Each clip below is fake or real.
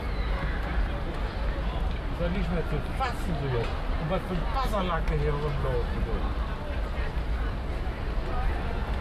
real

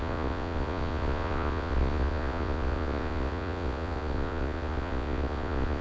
fake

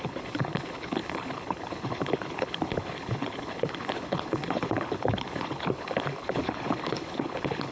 fake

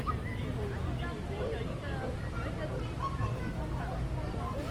real